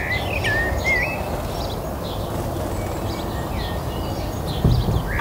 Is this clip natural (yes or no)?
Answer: yes